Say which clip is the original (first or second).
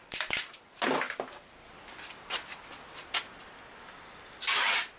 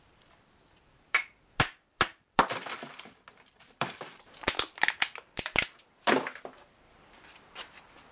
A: first